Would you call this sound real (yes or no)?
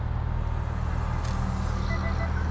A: yes